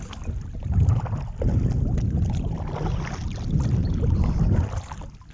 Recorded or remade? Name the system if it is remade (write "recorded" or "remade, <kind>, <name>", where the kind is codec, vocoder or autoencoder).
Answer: recorded